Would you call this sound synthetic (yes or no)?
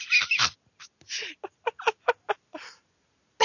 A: no